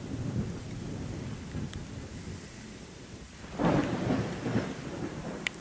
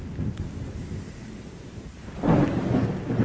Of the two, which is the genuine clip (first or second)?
second